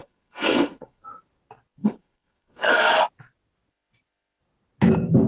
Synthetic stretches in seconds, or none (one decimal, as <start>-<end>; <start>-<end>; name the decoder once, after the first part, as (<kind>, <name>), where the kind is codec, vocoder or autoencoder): 0.0-1.0 (codec, SNAC); 1.8-3.0